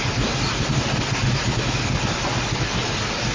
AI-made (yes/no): no